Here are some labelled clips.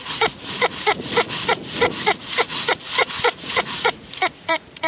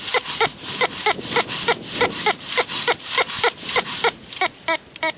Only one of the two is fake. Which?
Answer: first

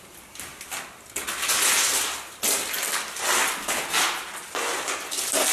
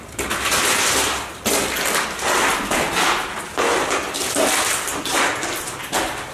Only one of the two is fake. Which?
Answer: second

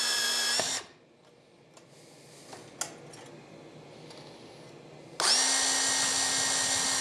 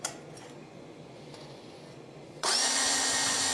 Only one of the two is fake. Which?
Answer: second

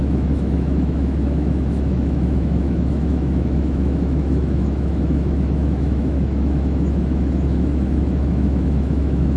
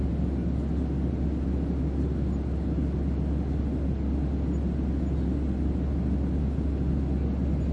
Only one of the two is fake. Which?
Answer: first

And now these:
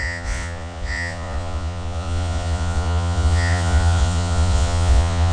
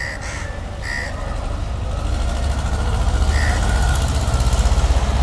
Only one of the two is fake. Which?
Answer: first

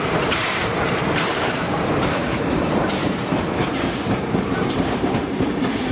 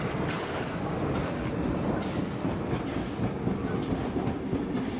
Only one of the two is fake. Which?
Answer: first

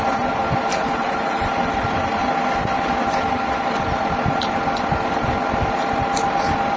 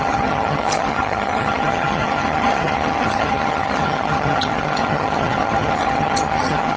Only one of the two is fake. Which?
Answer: second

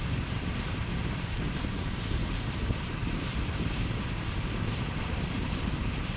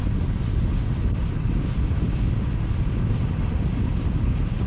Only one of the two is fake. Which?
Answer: first